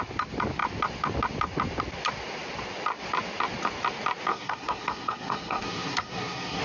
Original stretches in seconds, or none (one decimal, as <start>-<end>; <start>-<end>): 0.0-4.3